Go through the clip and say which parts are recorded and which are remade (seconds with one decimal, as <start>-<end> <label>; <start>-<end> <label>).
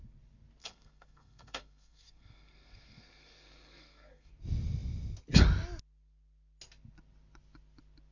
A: 0.0-0.6 recorded; 0.6-4.3 remade; 4.3-8.1 recorded